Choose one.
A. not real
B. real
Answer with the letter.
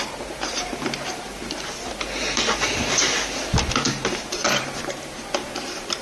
A